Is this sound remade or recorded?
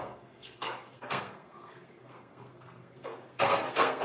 remade